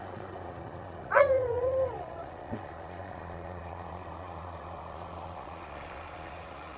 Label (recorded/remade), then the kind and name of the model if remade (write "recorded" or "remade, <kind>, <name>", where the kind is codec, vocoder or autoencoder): remade, vocoder, Vocos